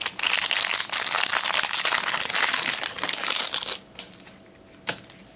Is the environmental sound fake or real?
real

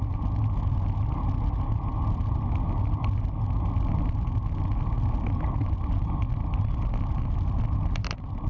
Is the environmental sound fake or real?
real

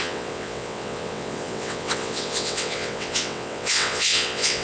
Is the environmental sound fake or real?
fake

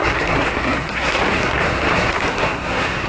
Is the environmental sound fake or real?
fake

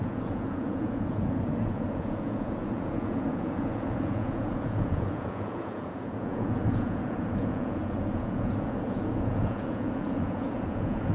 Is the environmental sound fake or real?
fake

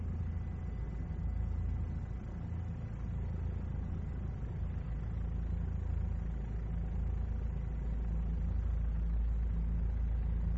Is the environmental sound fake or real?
real